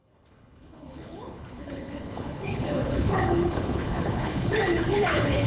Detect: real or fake fake